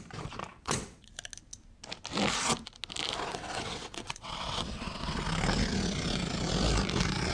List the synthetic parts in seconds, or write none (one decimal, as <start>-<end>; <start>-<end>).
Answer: 0.5-1.1; 3.3-5.2